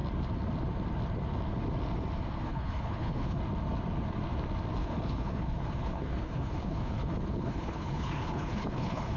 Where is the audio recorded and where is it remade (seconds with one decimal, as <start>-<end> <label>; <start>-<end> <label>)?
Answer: 0.0-2.4 recorded; 2.4-3.4 remade; 3.4-4.8 recorded; 4.8-9.2 remade